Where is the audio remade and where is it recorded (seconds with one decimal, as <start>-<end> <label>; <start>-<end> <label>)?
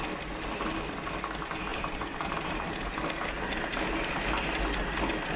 0.0-1.7 recorded; 1.7-2.9 remade; 2.9-3.7 recorded; 3.7-4.8 remade; 4.8-5.4 recorded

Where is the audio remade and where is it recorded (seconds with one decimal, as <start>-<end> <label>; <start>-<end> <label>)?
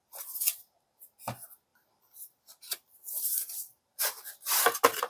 0.0-1.7 recorded; 1.7-4.6 remade; 4.6-5.1 recorded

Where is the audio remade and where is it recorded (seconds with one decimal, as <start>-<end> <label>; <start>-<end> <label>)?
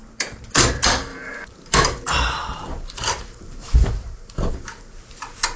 0.0-1.1 recorded; 1.1-4.5 remade; 4.5-5.6 recorded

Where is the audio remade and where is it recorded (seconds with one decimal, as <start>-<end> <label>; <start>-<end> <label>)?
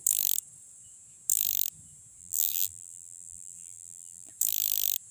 0.0-2.2 recorded; 2.2-4.3 remade; 4.3-5.1 recorded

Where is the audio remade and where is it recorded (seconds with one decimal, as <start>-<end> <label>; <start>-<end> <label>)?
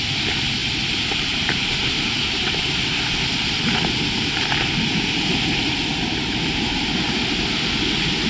0.0-0.6 recorded; 0.6-2.1 remade; 2.1-5.9 recorded; 5.9-7.2 remade; 7.2-8.3 recorded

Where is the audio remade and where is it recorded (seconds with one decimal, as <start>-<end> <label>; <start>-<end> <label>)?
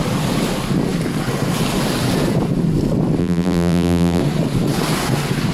0.0-3.2 recorded; 3.2-4.2 remade; 4.2-5.5 recorded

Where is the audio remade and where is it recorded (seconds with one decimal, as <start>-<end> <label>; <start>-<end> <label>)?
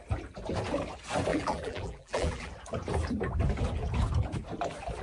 0.0-1.3 recorded; 1.3-2.5 remade; 2.5-5.0 recorded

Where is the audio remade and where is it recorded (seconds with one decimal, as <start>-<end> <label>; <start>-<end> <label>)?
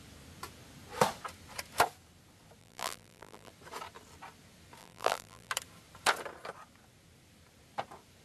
0.0-2.6 recorded; 2.6-3.5 remade; 3.5-4.8 recorded; 4.8-5.5 remade; 5.5-8.2 recorded